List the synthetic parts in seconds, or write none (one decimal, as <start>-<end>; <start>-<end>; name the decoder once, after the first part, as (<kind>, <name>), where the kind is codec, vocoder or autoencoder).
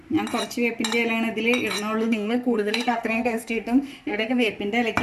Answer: 2.0-4.5 (codec, SNAC)